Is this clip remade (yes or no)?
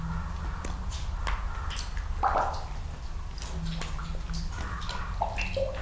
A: no